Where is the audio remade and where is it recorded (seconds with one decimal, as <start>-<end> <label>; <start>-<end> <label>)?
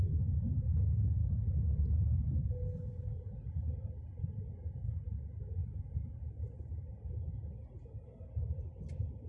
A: 0.0-5.6 recorded; 5.6-6.4 remade; 6.4-9.3 recorded